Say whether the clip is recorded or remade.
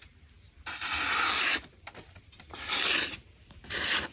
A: remade